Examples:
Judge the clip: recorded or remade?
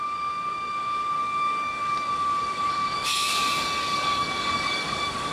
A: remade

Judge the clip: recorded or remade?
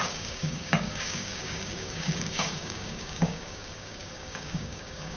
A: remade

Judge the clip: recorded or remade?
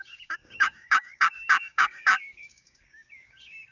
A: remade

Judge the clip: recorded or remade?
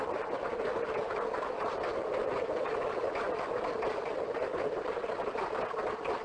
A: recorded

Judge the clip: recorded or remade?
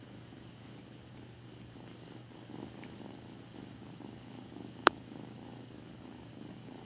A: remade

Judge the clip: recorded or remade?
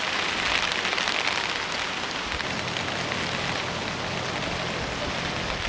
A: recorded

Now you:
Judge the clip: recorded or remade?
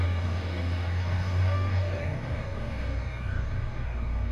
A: remade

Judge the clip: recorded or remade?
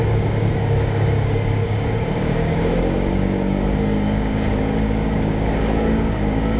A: remade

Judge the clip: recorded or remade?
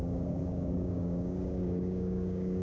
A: remade